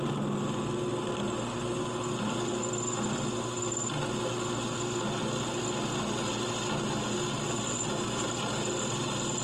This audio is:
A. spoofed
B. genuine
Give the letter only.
B